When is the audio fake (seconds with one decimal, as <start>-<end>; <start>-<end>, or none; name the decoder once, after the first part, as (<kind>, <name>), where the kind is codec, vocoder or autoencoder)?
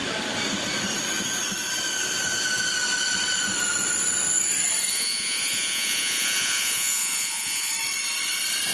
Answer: 4.9-7.7 (vocoder, Vocos)